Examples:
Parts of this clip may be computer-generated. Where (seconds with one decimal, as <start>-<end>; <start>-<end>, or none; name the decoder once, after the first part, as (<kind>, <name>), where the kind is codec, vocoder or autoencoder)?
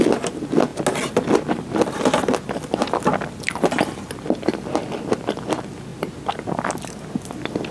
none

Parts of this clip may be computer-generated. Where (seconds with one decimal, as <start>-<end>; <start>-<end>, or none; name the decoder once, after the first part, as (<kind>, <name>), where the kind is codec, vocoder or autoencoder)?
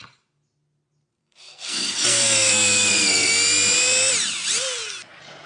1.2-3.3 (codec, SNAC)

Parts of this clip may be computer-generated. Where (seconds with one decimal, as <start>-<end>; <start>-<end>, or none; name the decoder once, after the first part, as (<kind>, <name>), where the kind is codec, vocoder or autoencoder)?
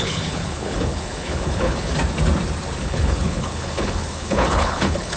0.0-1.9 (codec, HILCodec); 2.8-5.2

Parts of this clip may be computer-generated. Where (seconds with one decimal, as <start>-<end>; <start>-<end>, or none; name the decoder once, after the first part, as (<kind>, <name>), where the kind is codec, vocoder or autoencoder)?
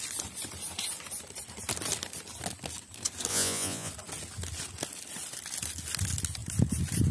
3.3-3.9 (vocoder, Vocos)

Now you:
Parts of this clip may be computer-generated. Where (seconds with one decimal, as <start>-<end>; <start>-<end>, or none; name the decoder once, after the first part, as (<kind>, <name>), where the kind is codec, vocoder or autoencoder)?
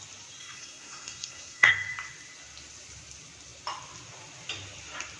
0.4-1.7 (codec, SNAC)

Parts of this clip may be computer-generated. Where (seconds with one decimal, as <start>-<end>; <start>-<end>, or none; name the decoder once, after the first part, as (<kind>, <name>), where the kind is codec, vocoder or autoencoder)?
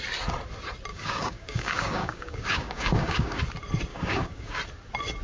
0.9-3.4 (codec, DAC); 3.9-4.6